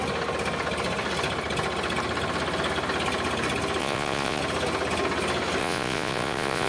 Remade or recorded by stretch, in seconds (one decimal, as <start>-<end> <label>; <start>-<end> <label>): 0.0-3.8 recorded; 3.8-4.4 remade; 4.4-5.6 recorded; 5.6-6.7 remade

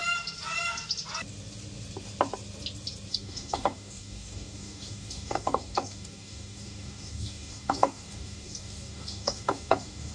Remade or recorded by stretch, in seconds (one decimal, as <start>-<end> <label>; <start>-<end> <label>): 0.0-3.1 recorded; 3.1-10.1 remade

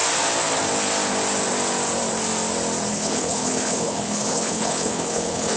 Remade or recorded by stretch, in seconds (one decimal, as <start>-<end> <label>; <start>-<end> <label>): 0.0-2.9 recorded; 2.9-5.6 remade

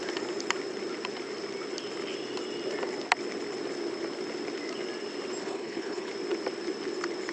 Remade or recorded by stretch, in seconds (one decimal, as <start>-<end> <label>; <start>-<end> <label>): 0.0-5.4 recorded; 5.4-6.1 remade; 6.1-7.3 recorded